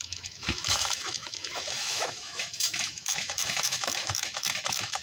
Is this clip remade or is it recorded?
remade